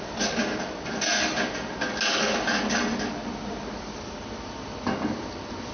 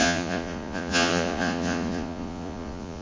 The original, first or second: first